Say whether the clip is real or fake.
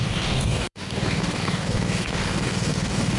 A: fake